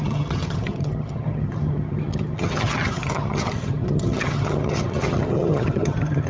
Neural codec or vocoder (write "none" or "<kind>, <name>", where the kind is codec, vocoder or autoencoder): vocoder, HiFi-GAN